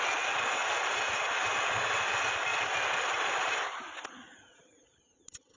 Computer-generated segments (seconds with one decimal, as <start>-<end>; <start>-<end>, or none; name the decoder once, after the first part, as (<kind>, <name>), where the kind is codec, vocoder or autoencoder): none